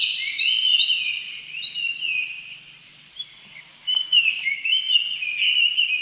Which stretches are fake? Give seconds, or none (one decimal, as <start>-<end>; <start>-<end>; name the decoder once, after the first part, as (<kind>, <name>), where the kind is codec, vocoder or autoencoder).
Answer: 3.7-4.8 (codec, DAC)

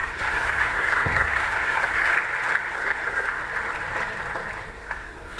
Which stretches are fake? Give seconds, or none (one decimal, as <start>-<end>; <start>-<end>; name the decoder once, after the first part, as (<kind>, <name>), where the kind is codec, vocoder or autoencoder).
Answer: 0.0-2.1 (codec, SNAC); 2.7-3.4; 4.7-5.4